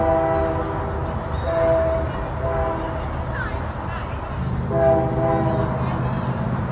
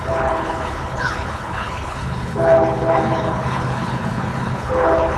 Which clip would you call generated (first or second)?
second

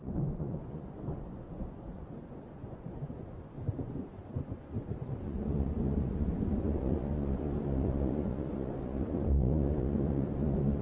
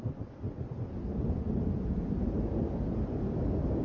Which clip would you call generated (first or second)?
first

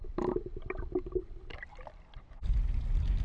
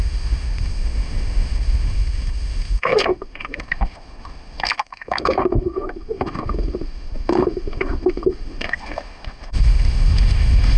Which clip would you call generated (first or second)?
second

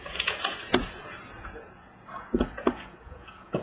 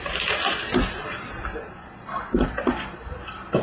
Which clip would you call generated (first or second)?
first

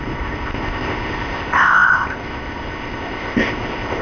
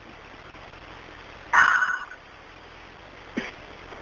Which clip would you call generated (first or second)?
first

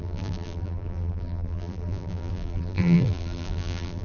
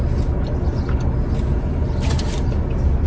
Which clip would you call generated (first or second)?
first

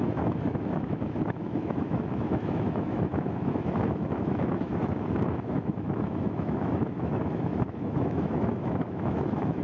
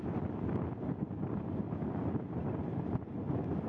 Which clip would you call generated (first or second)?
first